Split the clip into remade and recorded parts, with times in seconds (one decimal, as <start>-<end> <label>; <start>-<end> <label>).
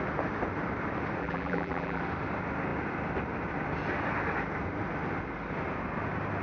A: 0.0-1.2 recorded; 1.2-2.0 remade; 2.0-6.4 recorded